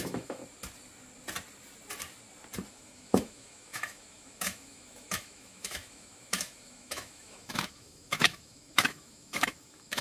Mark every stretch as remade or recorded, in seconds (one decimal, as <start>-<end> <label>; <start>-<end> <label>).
0.0-0.4 remade; 0.4-2.7 recorded; 2.7-10.0 remade